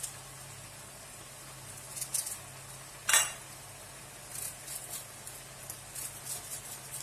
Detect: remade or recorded recorded